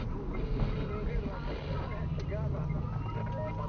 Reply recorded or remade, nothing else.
recorded